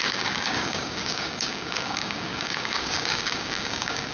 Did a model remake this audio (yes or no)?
yes